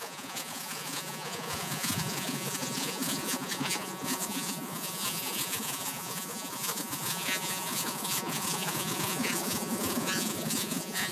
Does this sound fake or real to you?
fake